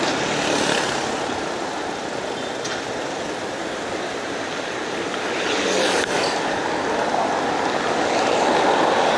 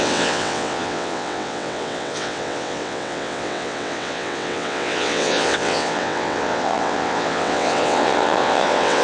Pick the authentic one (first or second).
first